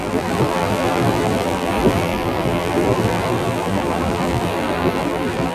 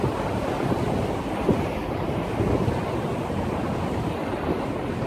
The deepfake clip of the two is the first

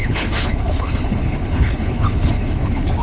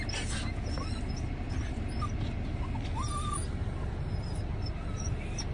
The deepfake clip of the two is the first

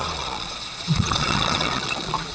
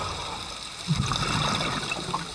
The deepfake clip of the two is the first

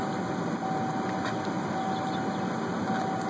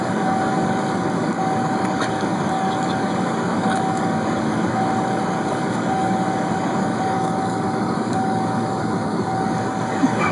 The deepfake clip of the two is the second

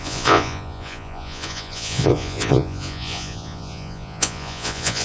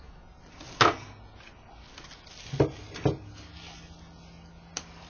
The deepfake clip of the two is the first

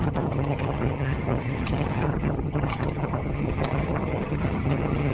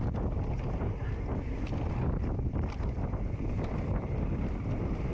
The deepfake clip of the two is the first